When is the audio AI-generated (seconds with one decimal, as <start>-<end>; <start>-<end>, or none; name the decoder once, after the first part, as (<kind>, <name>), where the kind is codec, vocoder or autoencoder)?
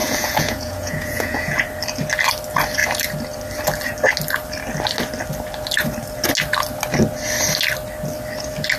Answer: 0.0-1.6 (vocoder, Vocos)